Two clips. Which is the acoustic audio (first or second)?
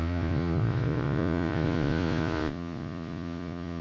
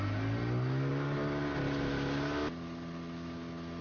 second